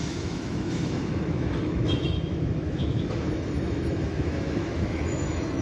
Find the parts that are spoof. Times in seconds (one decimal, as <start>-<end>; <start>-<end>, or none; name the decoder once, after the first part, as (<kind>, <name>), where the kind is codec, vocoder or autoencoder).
0.0-5.6 (autoencoder, DAC-VAE)